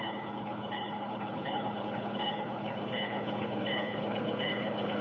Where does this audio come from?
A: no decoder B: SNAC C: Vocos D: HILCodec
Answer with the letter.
D